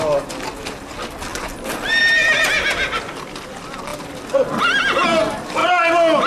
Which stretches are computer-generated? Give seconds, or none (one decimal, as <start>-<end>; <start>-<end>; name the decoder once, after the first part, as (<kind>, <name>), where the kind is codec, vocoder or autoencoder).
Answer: none